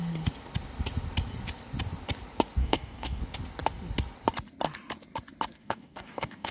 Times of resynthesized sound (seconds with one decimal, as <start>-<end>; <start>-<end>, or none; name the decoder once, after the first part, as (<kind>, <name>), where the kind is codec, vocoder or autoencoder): 2.6-3.2 (codec, DAC); 5.6-6.5